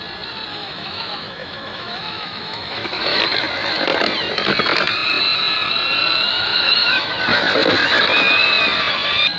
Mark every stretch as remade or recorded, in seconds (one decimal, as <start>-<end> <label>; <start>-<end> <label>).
0.0-0.5 recorded; 0.5-3.2 remade; 3.2-6.3 recorded; 6.3-7.1 remade; 7.1-9.4 recorded